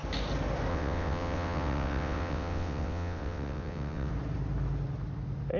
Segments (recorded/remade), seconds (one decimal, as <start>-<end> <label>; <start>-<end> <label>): 0.0-0.7 recorded; 0.7-4.1 remade; 4.1-5.6 recorded